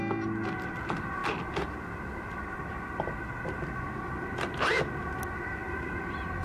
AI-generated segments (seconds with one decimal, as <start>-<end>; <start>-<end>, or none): none